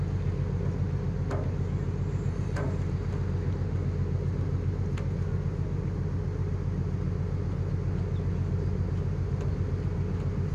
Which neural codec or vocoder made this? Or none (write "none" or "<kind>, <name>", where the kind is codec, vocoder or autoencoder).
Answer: none